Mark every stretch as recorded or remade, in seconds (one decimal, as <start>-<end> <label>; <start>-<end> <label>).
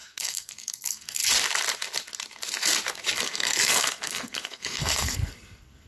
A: 0.0-1.2 remade; 1.2-3.2 recorded; 3.2-5.9 remade